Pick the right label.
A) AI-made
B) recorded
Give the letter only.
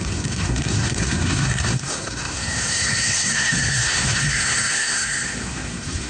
A